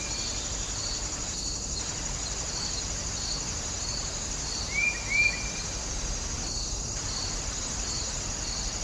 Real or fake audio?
real